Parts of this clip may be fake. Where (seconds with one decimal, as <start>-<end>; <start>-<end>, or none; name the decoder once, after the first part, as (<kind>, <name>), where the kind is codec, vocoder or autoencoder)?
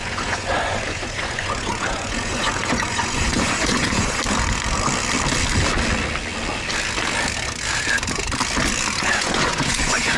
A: 0.0-4.2 (vocoder, Vocos); 9.0-10.2